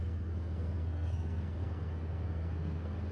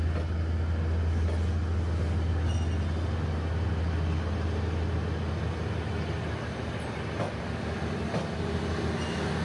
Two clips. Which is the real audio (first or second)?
second